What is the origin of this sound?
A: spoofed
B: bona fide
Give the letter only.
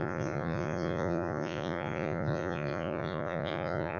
A